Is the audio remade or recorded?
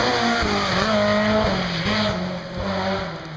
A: recorded